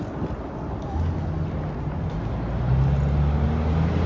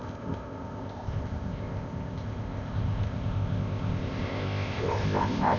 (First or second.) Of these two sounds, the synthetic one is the second